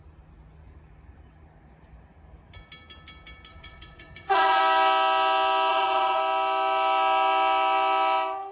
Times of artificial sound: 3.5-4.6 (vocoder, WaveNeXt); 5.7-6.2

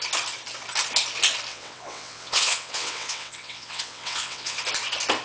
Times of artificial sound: 1.5-4.6 (vocoder, WaveNeXt)

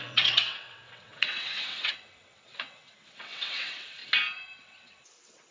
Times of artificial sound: 0.0-4.0 (vocoder, WaveNeXt); 4.6-5.5

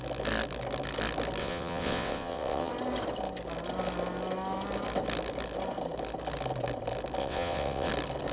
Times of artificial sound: 1.4-2.7 (vocoder, WaveNeXt); 7.2-7.9

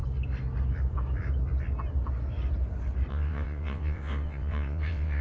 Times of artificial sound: 3.1-5.2 (vocoder, WaveNeXt)

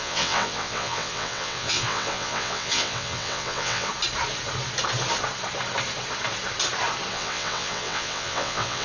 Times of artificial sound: 0.0-3.9 (vocoder, WaveNeXt); 7.1-8.8

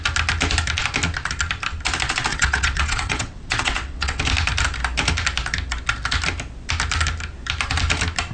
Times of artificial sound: 2.3-4.2 (vocoder, WaveNeXt)

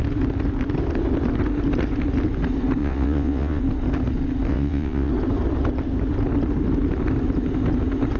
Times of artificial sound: 2.8-3.6 (vocoder, WaveNeXt); 4.5-5.1